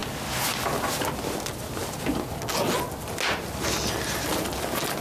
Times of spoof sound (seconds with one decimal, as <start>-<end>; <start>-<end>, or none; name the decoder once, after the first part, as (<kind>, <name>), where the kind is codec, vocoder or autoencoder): none